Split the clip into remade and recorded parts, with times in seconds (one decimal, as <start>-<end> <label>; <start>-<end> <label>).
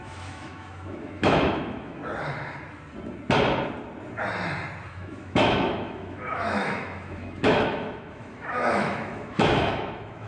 0.0-2.0 remade; 2.0-4.9 recorded; 4.9-10.3 remade